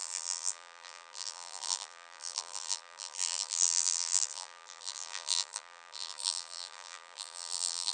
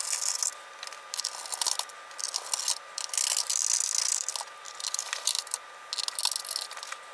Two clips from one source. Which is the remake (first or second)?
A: first